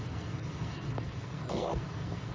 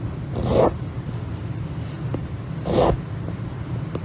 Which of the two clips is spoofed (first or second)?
first